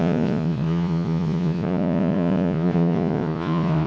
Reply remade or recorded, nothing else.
remade